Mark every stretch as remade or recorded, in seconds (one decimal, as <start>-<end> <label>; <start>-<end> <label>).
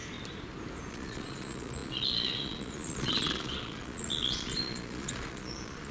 0.0-0.9 recorded; 0.9-5.9 remade